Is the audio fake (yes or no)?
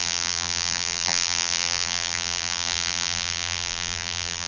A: yes